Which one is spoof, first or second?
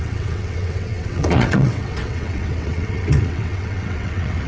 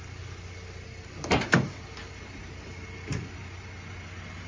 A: first